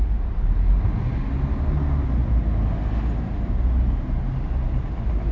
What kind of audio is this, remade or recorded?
recorded